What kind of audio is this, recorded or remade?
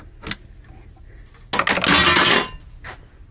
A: recorded